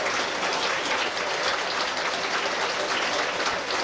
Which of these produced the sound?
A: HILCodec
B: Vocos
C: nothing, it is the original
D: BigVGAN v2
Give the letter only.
C